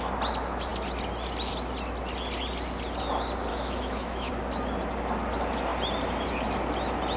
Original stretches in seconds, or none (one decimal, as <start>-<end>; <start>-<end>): 0.0-3.5; 4.3-7.2

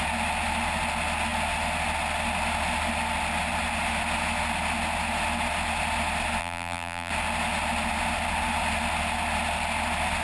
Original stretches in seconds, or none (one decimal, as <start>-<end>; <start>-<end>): 0.0-6.4; 7.1-10.2

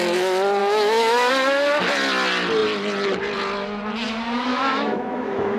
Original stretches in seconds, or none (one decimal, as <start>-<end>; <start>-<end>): 0.0-0.6; 1.3-4.5

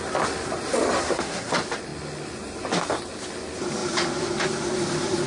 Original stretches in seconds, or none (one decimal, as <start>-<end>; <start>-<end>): 0.0-1.0; 1.5-5.3

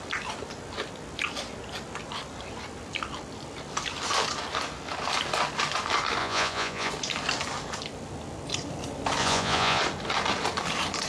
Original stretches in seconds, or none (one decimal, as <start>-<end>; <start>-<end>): 0.0-6.2; 6.9-9.2; 9.8-11.1

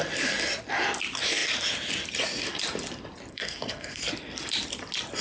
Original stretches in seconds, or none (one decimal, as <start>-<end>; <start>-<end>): 0.0-3.3; 4.0-5.2